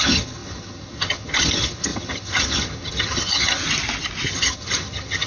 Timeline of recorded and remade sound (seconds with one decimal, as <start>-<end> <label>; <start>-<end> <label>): 0.0-3.6 remade; 3.6-4.3 recorded; 4.3-5.3 remade